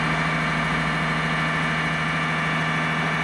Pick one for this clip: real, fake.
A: real